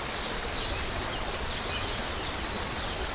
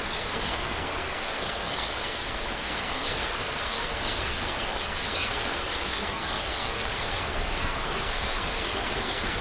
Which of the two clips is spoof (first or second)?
second